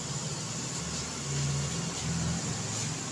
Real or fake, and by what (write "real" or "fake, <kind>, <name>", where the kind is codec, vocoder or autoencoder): real